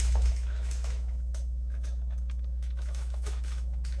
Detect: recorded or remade remade